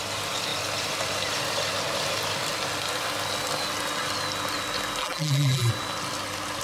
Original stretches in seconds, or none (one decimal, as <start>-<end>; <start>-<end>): 0.0-5.0; 5.7-6.6